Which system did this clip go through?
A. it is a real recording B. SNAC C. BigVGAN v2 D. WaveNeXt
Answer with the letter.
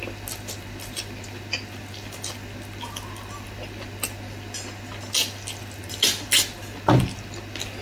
A